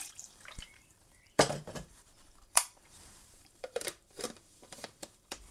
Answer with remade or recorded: remade